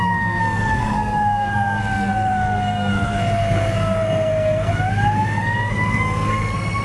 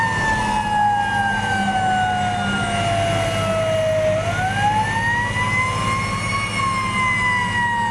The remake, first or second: first